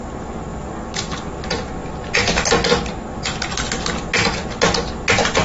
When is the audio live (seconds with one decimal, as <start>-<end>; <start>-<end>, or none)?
0.0-5.4